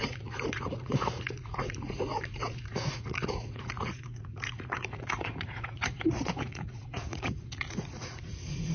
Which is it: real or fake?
fake